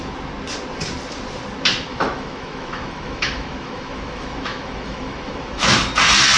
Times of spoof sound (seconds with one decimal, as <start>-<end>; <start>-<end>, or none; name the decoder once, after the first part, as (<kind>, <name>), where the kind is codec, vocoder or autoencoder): 1.9-5.7 (autoencoder, DAC-VAE)